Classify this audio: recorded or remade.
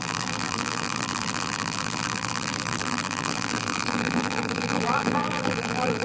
remade